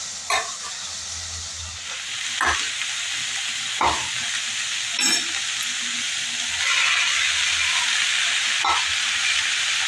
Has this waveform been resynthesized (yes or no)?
no